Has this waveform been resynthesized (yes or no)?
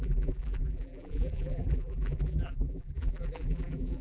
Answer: yes